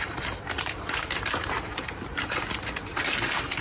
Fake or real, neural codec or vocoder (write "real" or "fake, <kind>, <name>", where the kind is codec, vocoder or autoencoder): fake, vocoder, BigVGAN v2